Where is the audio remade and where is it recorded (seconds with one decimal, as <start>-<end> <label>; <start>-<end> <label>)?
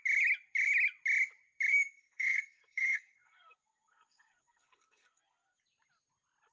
0.0-1.7 recorded; 1.7-5.6 remade; 5.6-6.5 recorded